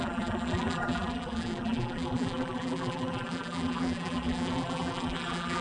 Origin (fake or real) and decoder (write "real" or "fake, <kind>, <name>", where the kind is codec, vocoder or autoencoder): fake, vocoder, BigVGAN v2